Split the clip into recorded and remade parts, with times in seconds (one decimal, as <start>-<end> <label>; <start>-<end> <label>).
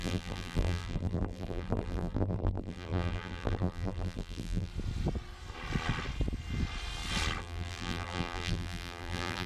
0.0-4.7 remade; 4.7-7.4 recorded; 7.4-9.5 remade